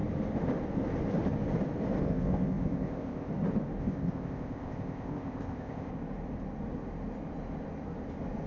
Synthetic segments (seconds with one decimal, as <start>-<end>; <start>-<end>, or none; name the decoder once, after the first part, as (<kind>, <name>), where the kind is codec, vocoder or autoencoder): 2.0-3.3 (codec, ZipCodec); 3.8-5.9